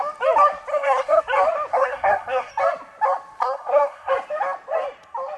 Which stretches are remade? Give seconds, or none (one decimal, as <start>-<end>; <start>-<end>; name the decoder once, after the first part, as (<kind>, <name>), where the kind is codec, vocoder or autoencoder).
0.7-1.2 (codec, SNAC); 1.7-2.5; 3.4-4.1

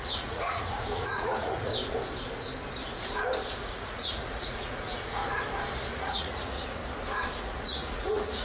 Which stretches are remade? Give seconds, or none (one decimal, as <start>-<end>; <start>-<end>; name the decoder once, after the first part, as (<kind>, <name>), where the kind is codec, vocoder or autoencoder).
0.0-1.7 (vocoder, Vocos); 3.6-5.2; 5.9-6.8; 7.4-8.4

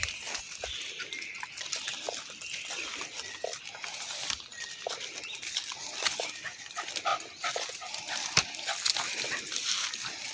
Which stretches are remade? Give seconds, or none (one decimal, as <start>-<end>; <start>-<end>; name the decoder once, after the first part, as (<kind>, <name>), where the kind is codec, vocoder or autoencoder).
none